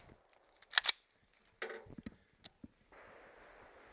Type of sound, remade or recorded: recorded